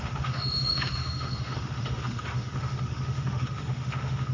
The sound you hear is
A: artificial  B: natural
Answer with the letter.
A